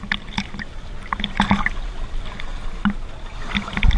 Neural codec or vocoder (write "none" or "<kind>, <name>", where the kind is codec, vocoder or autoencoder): none